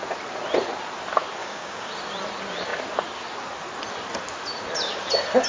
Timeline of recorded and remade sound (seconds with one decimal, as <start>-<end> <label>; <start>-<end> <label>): 0.0-1.4 recorded; 1.4-1.9 remade; 1.9-5.5 recorded